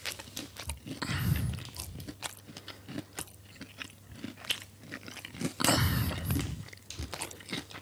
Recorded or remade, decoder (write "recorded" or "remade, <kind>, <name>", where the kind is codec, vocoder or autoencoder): recorded